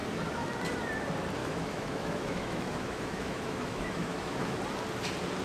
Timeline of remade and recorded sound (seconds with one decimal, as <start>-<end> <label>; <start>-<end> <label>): 0.0-1.4 recorded; 1.4-4.6 remade; 4.6-5.4 recorded